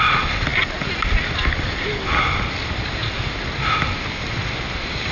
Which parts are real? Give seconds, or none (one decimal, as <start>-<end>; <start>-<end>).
0.0-5.1

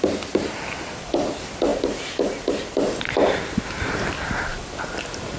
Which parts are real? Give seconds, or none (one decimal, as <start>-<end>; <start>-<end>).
0.0-5.4

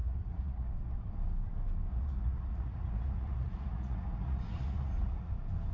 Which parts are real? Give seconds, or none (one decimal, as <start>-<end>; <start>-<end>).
0.7-1.9; 5.3-5.7

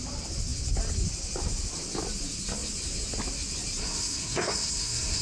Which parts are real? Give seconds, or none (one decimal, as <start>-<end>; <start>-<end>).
0.0-3.8

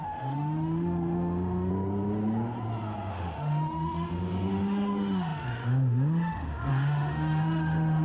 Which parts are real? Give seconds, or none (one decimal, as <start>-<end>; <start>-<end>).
1.7-3.1

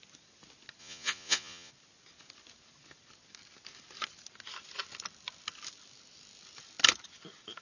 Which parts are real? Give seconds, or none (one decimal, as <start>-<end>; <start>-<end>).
0.0-0.8; 1.7-7.6